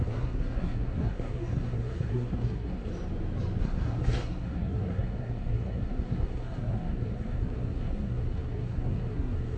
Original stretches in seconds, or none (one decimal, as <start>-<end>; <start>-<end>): 2.9-3.6